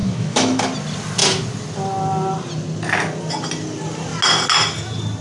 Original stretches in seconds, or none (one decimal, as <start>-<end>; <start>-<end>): 0.6-5.2